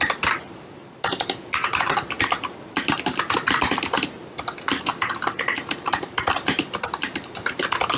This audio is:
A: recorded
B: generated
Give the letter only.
B